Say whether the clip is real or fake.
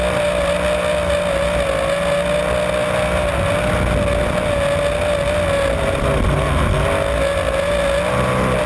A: real